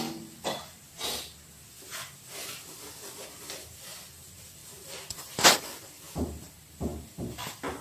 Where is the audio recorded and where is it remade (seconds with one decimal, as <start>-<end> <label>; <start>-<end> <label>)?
0.0-7.8 remade